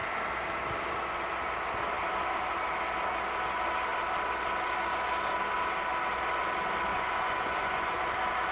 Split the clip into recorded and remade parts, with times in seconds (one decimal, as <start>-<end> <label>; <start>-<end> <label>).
0.0-6.9 recorded; 6.9-8.0 remade; 8.0-8.5 recorded